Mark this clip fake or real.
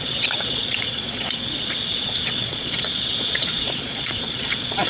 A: fake